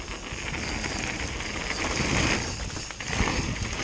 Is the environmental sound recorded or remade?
recorded